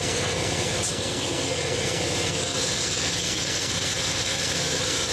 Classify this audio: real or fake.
fake